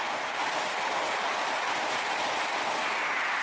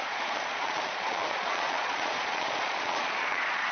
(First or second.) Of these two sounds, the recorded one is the first